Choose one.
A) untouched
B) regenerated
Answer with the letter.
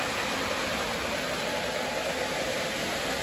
A